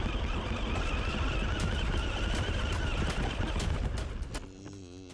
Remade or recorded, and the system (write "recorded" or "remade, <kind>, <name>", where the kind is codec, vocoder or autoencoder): recorded